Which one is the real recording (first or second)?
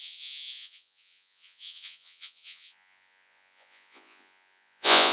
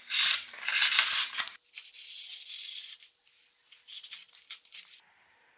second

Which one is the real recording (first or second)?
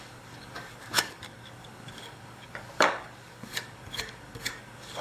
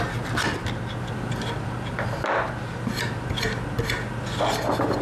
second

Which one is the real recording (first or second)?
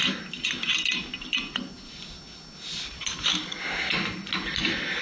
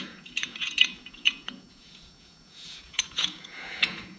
first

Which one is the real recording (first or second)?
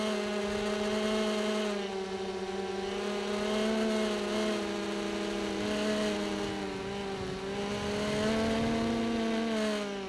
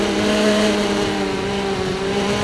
first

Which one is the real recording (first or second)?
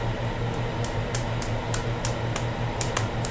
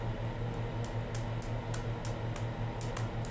second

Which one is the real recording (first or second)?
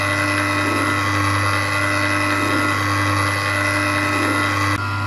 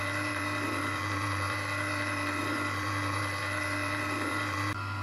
first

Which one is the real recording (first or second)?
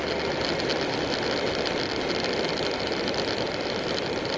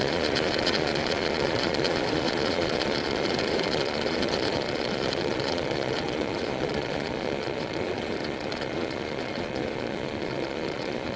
first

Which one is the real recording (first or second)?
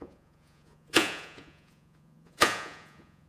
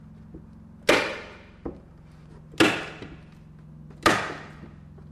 second